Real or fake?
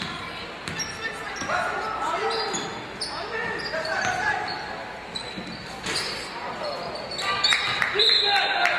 real